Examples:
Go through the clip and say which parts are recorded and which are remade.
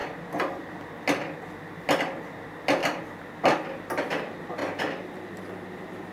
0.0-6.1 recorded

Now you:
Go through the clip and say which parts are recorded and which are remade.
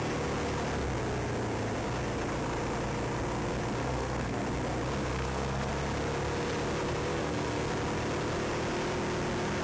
0.0-3.8 recorded; 3.8-4.4 remade; 4.4-5.1 recorded; 5.1-5.7 remade; 5.7-7.1 recorded; 7.1-7.7 remade; 7.7-9.6 recorded